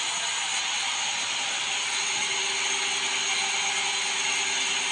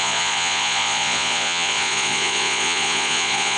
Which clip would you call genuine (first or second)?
first